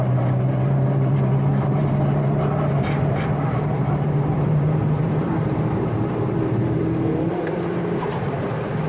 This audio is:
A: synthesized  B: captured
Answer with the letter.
A